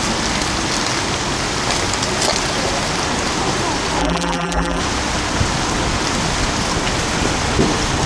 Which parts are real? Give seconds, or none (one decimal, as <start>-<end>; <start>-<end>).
0.0-4.0; 4.8-8.1